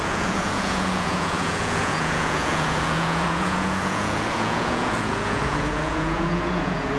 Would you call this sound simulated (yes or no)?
yes